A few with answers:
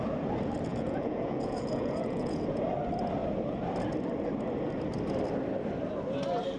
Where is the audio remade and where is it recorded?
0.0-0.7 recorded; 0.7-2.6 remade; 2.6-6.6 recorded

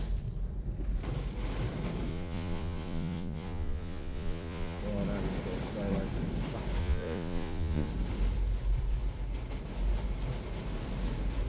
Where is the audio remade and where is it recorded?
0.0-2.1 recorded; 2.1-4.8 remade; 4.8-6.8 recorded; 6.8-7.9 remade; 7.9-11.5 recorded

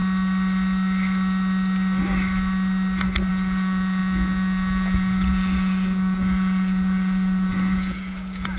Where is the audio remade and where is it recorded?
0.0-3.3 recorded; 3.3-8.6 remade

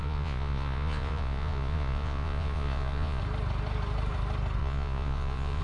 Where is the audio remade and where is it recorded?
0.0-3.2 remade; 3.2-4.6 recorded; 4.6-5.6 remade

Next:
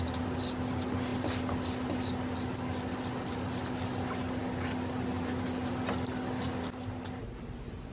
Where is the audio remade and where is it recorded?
0.0-7.9 recorded

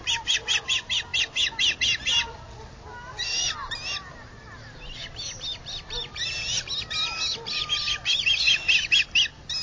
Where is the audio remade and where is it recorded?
0.0-9.6 recorded

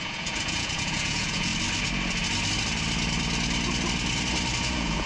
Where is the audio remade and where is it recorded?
0.0-1.5 remade; 1.5-4.6 recorded; 4.6-5.1 remade